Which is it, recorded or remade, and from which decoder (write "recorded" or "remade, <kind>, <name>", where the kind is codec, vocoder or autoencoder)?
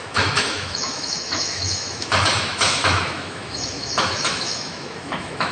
remade, autoencoder, DAC-VAE